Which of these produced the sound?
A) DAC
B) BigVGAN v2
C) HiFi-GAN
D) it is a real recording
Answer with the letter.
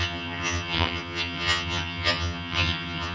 C